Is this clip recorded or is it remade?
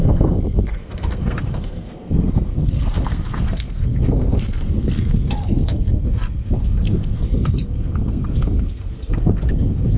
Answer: remade